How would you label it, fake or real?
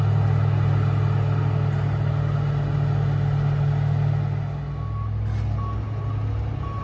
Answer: real